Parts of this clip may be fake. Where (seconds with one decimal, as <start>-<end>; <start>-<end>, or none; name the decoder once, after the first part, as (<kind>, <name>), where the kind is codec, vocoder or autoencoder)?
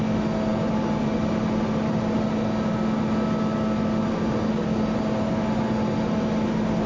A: none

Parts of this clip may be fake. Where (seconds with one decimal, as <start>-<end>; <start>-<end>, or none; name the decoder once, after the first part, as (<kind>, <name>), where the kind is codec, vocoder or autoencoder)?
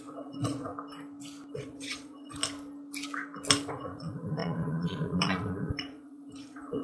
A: 0.0-0.7 (vocoder, Vocos); 1.5-2.4; 3.7-6.8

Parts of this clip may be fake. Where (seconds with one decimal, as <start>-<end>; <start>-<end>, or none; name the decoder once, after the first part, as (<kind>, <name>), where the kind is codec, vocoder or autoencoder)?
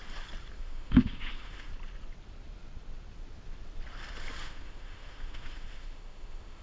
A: 0.6-1.7 (autoencoder, DAC-VAE); 4.4-6.6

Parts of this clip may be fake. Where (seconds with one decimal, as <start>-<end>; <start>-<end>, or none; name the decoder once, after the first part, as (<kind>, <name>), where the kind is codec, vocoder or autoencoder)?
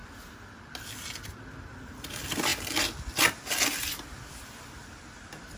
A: none